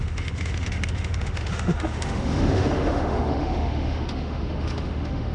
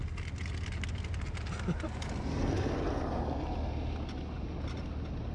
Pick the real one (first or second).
second